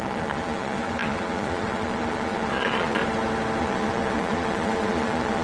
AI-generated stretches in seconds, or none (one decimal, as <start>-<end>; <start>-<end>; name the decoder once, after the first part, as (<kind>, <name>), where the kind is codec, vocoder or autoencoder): 0.0-3.0 (vocoder, Vocos); 3.6-5.4